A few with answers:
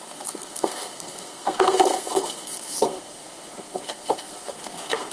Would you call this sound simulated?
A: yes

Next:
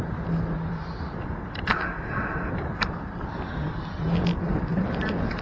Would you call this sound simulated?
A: no